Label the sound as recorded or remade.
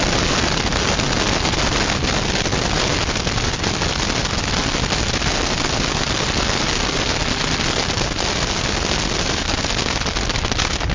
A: recorded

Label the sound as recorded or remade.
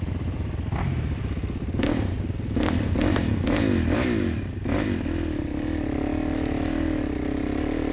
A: recorded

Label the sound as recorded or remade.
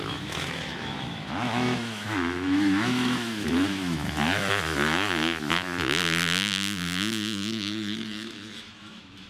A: remade